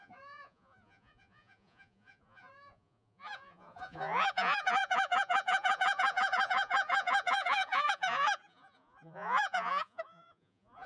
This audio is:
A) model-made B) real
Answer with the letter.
A